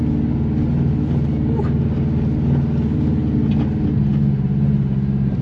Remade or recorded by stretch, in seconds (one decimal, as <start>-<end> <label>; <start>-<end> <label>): 0.0-5.4 recorded